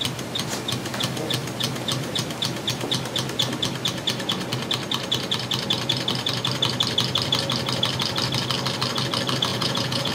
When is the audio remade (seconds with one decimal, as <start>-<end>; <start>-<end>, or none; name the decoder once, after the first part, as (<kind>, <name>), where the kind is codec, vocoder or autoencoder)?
9.5-10.1 (vocoder, Vocos)